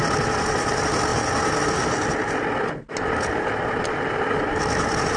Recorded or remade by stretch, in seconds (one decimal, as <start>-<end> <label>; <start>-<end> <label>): 0.0-5.2 recorded